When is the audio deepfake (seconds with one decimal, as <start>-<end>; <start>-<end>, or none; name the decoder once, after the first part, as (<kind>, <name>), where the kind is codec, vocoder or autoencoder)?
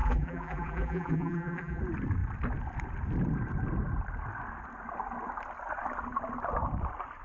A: 0.0-1.8 (vocoder, BigVGAN v2)